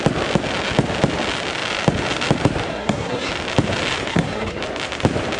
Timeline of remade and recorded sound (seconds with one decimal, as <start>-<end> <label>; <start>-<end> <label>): 0.0-2.7 recorded; 2.7-3.3 remade; 3.3-4.1 recorded; 4.1-4.6 remade; 4.6-5.4 recorded